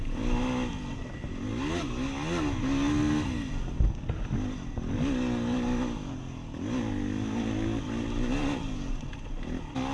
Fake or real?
real